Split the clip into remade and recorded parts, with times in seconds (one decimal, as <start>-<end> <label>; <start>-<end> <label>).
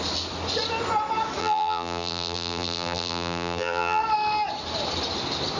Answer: 0.0-1.4 recorded; 1.4-4.0 remade; 4.0-5.6 recorded